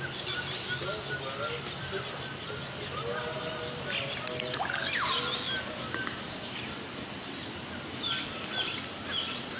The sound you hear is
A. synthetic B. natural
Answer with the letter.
B